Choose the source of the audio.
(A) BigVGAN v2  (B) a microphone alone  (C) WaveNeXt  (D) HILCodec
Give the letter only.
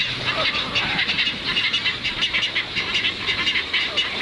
B